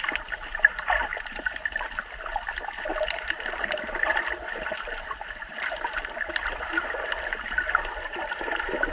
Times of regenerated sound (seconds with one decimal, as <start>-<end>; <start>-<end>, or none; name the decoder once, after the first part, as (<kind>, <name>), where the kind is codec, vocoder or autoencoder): none

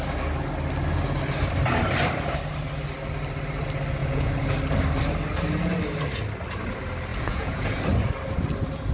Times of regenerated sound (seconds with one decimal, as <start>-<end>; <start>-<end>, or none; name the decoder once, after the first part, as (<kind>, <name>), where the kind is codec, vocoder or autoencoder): 4.0-4.5 (vocoder, Vocos); 7.1-7.8